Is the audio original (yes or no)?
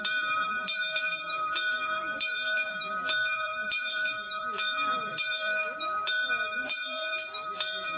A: no